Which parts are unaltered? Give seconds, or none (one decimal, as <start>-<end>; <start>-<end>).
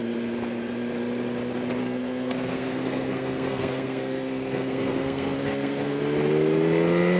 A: 0.0-1.8; 6.0-7.2